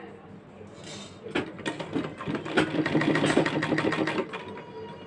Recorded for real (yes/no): yes